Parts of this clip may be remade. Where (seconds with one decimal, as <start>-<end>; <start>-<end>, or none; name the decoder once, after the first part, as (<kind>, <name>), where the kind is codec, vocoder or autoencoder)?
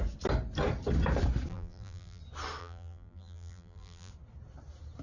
1.5-2.2 (vocoder, BigVGAN v2); 2.6-4.1